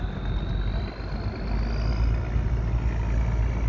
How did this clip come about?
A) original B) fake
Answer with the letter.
A